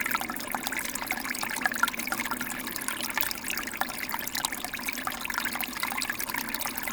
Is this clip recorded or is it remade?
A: recorded